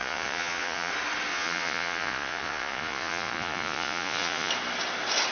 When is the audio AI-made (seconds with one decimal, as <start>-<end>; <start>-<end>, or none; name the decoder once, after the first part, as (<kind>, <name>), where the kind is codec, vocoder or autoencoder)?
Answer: 0.0-0.9 (vocoder, Vocos); 1.3-4.5